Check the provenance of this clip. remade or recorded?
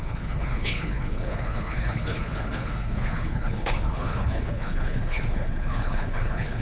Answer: remade